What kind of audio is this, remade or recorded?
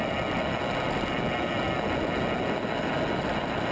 recorded